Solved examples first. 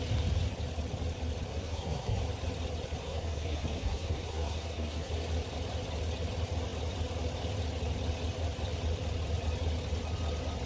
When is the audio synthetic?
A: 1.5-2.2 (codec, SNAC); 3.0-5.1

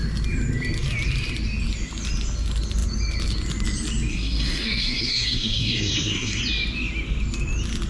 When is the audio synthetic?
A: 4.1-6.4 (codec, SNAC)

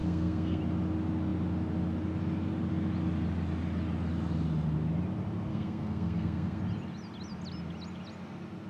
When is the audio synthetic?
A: 0.0-0.6 (codec, SNAC); 5.5-6.6

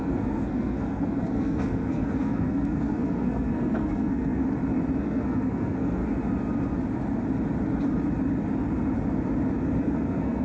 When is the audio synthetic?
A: 0.0-4.4 (codec, SNAC); 5.0-6.0; 9.8-10.4